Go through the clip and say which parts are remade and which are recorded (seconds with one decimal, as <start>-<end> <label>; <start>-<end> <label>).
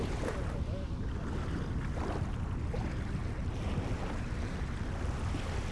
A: 0.0-3.2 recorded; 3.2-4.6 remade; 4.6-5.7 recorded